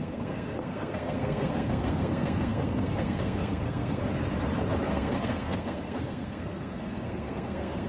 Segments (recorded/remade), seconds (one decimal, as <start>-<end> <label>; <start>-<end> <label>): 0.0-4.0 remade; 4.0-4.9 recorded; 4.9-7.9 remade